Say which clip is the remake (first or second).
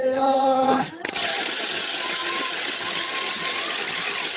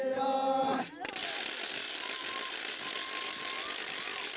first